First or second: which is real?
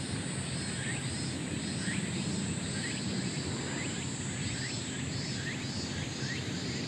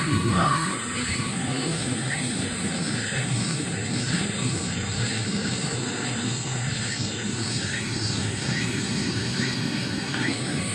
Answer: first